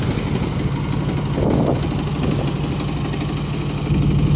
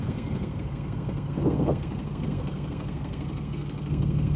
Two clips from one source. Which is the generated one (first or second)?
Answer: second